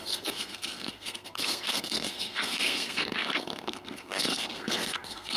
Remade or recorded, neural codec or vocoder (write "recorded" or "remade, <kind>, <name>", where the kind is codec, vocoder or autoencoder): remade, codec, SNAC